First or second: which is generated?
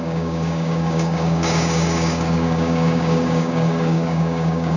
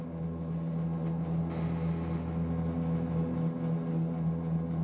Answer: first